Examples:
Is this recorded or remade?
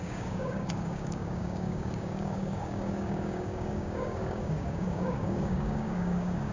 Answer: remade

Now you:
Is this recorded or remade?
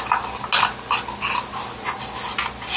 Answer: recorded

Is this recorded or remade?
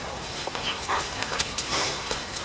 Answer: remade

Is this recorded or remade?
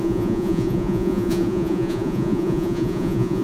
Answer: remade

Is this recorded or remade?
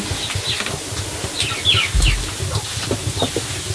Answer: recorded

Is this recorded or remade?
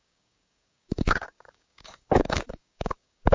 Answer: remade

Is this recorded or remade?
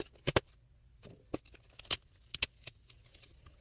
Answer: recorded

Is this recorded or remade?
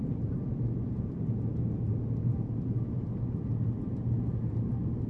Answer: remade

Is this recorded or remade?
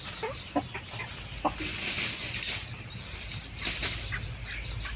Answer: recorded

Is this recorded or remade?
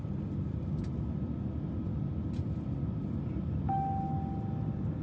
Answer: recorded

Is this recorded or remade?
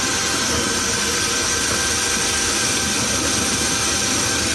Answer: recorded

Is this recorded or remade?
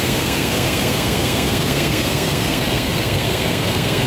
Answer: remade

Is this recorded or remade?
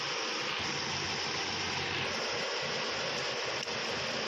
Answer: recorded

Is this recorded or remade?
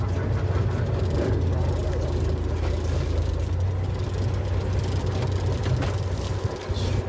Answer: recorded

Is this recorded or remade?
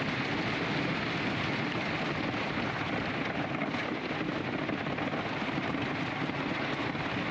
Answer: recorded